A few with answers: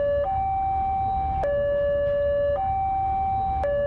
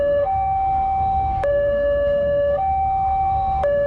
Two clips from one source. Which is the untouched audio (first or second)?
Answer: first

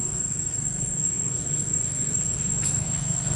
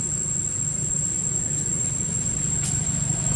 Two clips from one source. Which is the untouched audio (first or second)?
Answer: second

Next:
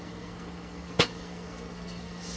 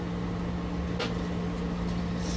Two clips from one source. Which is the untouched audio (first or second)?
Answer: second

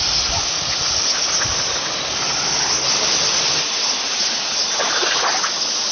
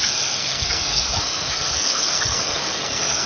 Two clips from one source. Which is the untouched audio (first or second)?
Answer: first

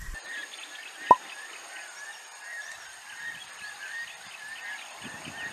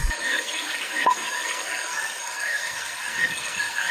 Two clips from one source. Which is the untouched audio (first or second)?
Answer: first